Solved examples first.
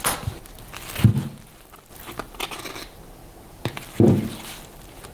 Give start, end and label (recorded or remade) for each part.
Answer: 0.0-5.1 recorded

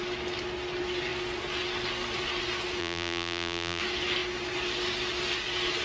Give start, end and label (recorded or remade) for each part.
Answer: 0.0-2.8 recorded; 2.8-3.8 remade; 3.8-5.8 recorded

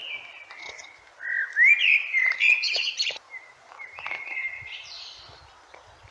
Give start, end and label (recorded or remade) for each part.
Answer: 0.0-1.7 recorded; 1.7-5.4 remade; 5.4-6.1 recorded

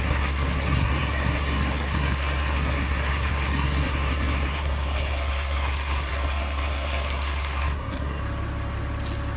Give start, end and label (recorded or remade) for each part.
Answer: 0.0-8.2 remade; 8.2-9.4 recorded